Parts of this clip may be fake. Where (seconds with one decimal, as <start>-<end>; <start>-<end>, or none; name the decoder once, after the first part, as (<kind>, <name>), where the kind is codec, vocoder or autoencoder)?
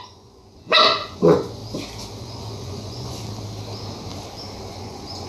0.0-1.6 (vocoder, Vocos); 2.2-3.2; 4.7-5.3